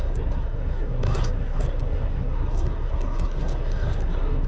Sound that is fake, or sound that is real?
fake